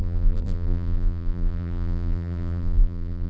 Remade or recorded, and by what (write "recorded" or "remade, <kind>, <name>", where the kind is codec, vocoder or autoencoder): remade, vocoder, BigVGAN v2